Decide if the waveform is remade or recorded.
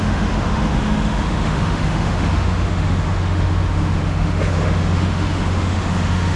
remade